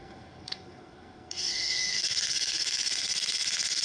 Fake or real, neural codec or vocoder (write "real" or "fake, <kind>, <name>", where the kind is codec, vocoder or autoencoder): fake, codec, SNAC